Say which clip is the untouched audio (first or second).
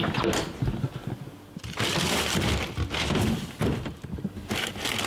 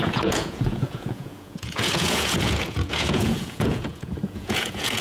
first